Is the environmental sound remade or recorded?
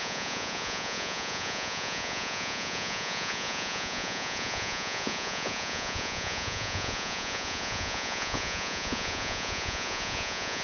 remade